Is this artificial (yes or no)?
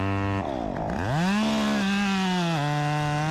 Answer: no